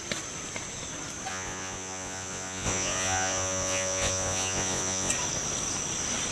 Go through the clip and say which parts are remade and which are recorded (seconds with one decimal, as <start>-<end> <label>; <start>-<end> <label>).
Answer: 0.0-1.3 recorded; 1.3-5.1 remade; 5.1-6.3 recorded

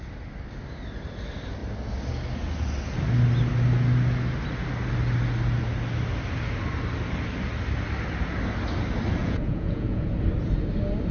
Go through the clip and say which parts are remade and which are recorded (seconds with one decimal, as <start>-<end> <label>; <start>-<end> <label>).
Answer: 0.0-9.2 recorded; 9.2-10.1 remade; 10.1-11.1 recorded